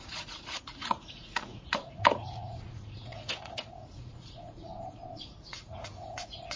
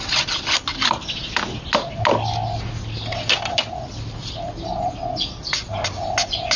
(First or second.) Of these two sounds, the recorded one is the second